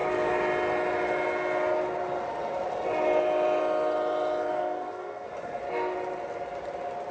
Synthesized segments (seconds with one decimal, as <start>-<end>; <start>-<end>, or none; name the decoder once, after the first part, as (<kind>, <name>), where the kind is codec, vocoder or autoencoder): 4.5-5.6 (codec, SNAC)